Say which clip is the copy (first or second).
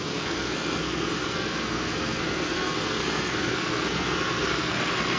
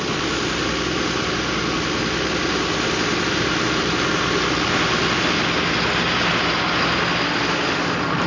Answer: first